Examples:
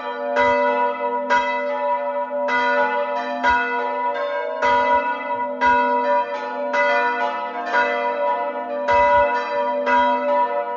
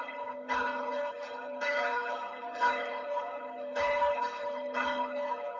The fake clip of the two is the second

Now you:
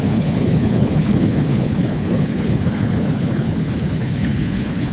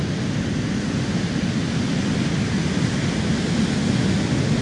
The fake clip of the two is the first